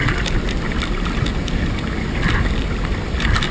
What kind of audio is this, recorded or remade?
recorded